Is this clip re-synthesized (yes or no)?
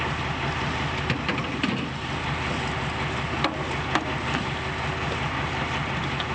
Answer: no